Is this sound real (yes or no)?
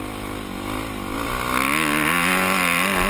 yes